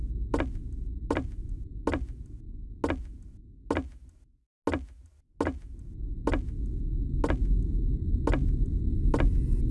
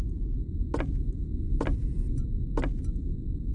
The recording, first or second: first